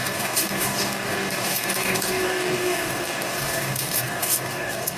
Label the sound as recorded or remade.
remade